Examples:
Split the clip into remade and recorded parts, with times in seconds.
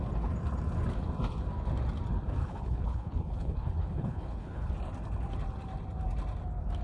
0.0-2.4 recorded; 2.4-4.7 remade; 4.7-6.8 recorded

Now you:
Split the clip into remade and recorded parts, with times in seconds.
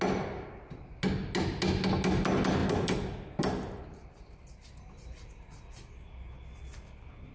0.0-7.3 recorded